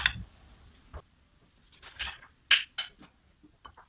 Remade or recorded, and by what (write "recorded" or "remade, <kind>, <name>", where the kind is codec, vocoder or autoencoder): recorded